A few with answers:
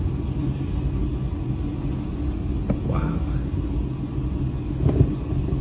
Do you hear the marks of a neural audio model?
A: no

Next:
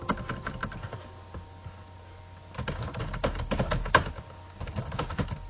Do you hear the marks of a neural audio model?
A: no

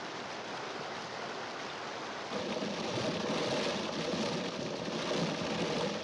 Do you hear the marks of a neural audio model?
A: no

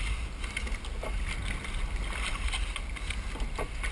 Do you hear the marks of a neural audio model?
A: no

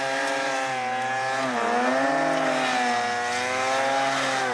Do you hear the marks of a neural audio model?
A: no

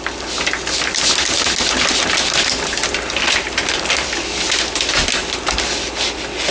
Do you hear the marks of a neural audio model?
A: no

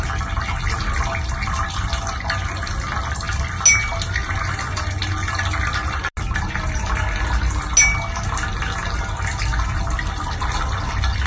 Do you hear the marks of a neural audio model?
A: no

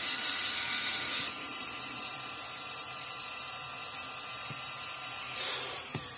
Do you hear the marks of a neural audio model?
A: yes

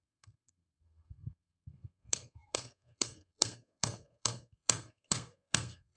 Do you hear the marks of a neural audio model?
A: yes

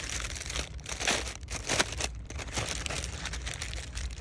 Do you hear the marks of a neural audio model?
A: yes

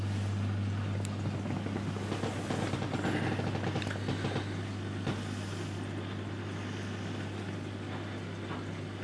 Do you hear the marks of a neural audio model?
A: no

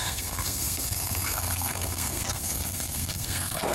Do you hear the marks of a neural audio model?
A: yes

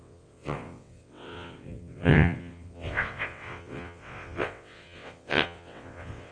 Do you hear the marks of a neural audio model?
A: yes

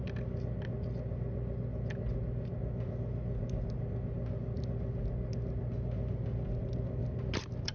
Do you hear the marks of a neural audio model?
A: no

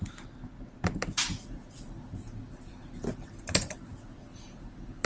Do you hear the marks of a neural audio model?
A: no